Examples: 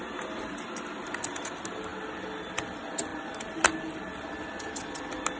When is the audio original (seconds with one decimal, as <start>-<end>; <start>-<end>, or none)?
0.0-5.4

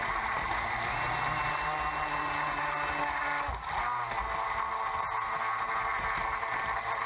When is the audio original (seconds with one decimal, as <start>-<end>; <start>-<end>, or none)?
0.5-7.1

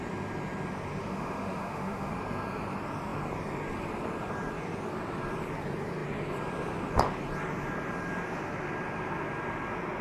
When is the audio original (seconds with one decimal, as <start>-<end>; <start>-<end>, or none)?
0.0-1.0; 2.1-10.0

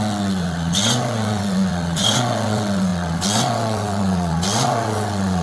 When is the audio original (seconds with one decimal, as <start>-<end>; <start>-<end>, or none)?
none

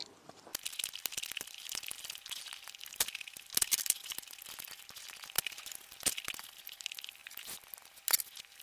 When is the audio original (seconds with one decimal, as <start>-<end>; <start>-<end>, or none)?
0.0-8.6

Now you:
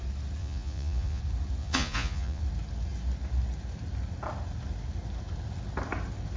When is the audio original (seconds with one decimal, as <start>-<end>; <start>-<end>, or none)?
0.0-0.4; 1.2-1.6; 2.4-6.4

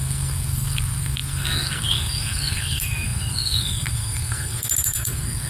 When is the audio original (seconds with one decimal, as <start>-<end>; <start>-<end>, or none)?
none

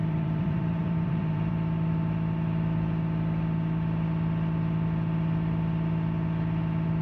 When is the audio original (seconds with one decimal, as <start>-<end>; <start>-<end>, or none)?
1.5-7.0